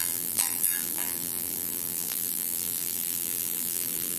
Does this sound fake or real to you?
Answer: fake